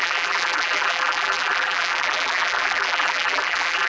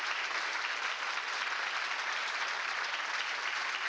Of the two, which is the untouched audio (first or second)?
second